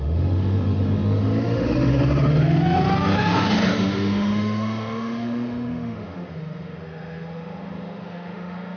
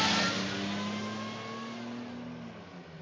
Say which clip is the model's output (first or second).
first